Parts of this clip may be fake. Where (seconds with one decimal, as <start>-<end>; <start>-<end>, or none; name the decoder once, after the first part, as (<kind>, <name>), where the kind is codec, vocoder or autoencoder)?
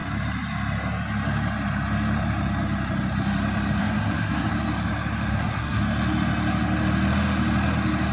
3.8-4.5 (codec, SNAC); 5.3-5.8